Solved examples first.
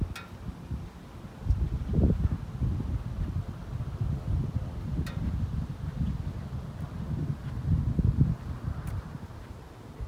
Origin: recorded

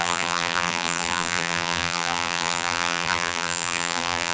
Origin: remade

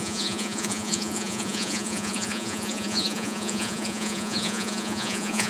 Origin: remade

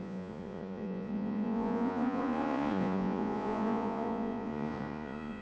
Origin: remade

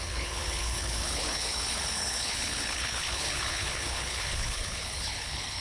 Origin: remade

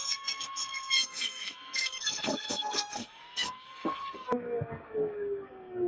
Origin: remade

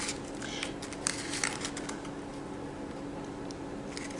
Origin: recorded